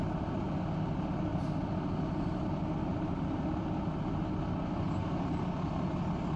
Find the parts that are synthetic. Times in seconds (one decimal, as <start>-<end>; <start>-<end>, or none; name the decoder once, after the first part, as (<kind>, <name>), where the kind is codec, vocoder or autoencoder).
none